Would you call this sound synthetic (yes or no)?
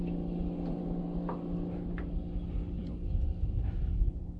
no